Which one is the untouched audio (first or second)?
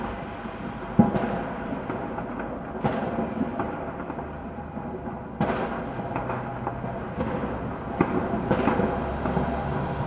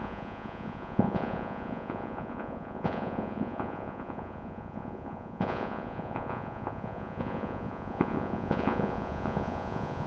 first